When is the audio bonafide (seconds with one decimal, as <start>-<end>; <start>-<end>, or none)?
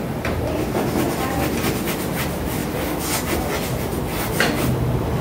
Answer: 0.0-5.2